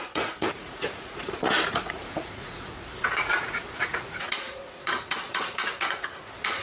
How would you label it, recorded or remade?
remade